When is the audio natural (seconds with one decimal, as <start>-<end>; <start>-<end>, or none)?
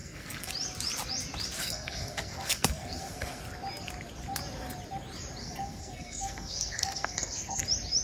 0.5-1.6; 3.4-5.4; 7.6-8.0